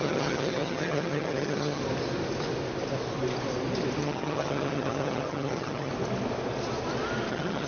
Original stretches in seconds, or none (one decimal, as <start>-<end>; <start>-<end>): 1.8-4.0; 5.9-7.3

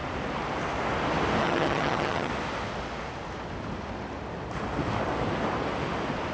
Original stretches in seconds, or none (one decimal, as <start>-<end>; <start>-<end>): 0.0-1.4; 2.3-6.3

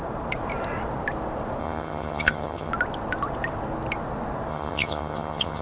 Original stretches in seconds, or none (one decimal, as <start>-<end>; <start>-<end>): 0.0-1.6; 2.7-4.5

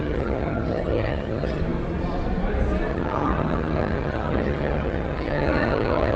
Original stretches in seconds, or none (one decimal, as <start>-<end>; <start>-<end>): 1.6-2.9

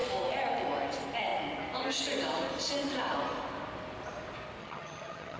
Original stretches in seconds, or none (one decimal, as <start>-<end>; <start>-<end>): 0.0-4.6

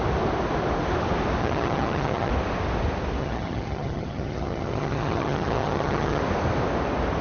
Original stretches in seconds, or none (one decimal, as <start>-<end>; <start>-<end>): 0.0-1.4; 2.3-3.2; 6.2-7.2

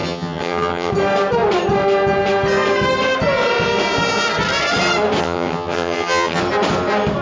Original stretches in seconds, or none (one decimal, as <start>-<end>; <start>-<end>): 0.9-5.2; 6.4-7.2